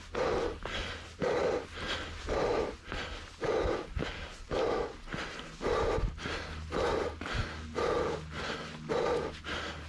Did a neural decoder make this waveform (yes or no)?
no